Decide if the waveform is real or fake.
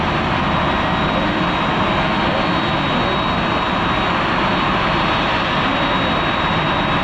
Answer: real